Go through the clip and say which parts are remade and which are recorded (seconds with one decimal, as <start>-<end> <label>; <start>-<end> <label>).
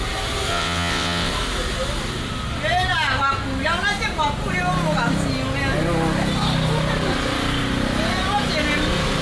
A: 0.0-0.5 recorded; 0.5-1.3 remade; 1.3-9.2 recorded